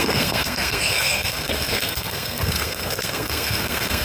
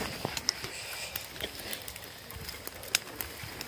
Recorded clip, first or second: second